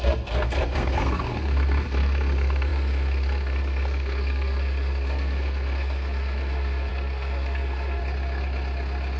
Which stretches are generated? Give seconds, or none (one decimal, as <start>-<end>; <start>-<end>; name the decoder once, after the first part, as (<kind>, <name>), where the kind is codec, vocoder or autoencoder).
0.0-8.0 (codec, SNAC)